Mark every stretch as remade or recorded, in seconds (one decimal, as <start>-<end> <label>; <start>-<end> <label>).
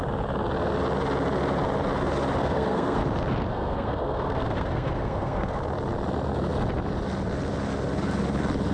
0.0-2.4 recorded; 2.4-3.0 remade; 3.0-3.5 recorded; 3.5-5.6 remade; 5.6-8.7 recorded